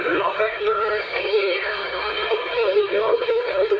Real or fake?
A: fake